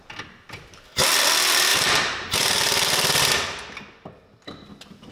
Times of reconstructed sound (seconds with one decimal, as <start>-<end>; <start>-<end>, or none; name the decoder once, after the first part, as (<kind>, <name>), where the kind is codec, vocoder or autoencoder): 1.7-3.2 (vocoder, BigVGAN v2)